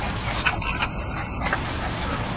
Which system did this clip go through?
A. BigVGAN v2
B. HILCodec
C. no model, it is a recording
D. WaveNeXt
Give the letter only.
C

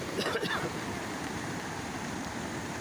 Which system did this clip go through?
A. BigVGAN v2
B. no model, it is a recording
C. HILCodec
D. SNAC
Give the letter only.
A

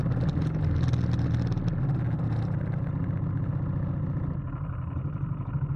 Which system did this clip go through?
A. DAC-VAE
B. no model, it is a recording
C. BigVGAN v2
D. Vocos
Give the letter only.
B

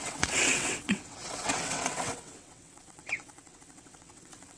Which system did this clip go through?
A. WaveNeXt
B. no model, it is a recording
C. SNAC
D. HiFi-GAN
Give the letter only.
A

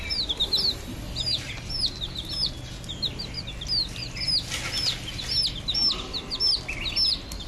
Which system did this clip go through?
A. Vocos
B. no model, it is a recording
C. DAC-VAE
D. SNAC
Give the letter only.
B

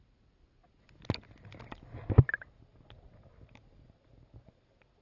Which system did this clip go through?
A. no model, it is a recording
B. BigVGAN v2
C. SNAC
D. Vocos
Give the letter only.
A